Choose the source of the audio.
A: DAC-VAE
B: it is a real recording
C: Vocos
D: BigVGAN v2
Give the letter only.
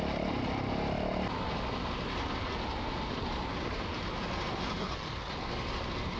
B